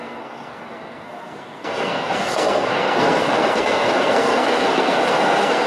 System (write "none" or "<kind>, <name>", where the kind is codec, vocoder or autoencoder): codec, SNAC